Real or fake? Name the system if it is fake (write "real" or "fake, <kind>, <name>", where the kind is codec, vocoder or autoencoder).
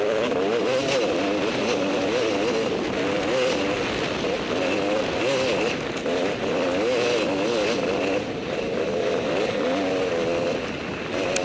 real